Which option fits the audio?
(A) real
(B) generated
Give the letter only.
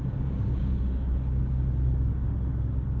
B